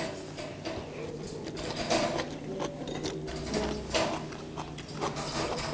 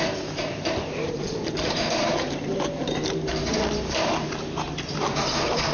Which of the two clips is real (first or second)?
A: first